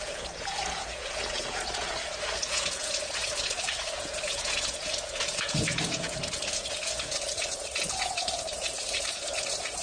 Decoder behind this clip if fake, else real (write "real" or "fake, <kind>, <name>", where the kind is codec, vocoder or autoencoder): fake, vocoder, Vocos